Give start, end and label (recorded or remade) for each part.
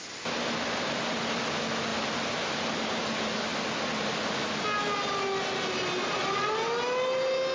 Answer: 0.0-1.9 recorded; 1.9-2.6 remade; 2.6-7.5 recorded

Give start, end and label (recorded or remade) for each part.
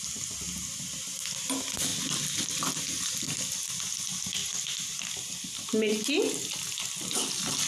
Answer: 0.0-7.7 recorded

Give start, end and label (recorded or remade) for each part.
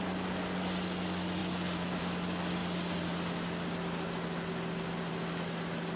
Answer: 0.0-6.0 recorded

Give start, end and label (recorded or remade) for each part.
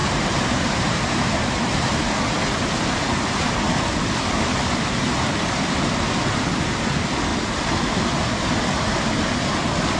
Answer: 0.0-2.2 remade; 2.2-7.3 recorded; 7.3-8.0 remade; 8.0-10.0 recorded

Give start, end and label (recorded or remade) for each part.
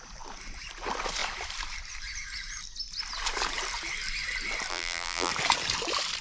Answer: 0.0-4.7 recorded; 4.7-5.3 remade; 5.3-6.2 recorded